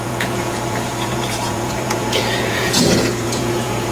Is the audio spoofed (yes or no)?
yes